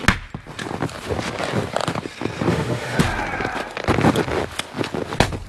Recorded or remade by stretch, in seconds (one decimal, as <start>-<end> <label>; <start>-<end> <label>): 0.0-2.5 recorded; 2.5-3.0 remade; 3.0-5.5 recorded